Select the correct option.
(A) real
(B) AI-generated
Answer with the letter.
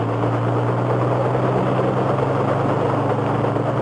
A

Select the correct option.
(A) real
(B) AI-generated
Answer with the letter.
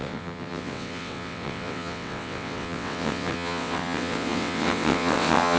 B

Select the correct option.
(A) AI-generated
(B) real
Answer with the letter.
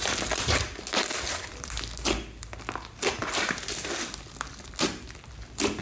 B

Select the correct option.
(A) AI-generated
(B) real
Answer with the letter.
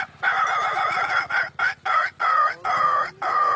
B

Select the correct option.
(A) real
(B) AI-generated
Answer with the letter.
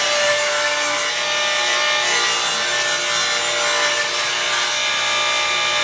A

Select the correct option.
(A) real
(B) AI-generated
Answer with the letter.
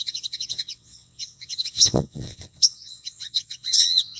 B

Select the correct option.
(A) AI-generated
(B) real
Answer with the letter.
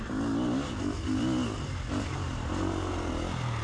B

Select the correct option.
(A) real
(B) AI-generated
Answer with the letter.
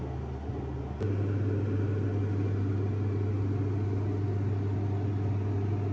A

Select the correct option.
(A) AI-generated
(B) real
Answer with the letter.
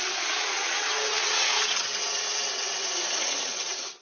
A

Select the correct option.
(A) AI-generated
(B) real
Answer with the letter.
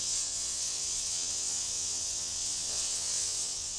A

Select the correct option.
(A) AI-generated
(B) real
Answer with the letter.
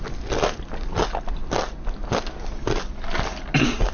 B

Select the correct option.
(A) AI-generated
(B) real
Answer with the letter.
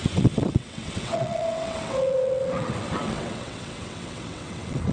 A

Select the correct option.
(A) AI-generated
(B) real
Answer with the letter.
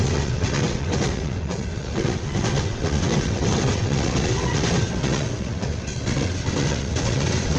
A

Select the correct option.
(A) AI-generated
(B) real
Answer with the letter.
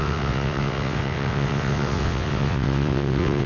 A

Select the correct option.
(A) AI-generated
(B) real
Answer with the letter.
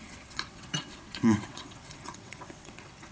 A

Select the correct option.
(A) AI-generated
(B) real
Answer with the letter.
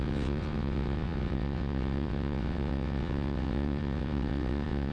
A